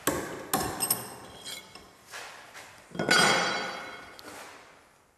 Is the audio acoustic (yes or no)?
yes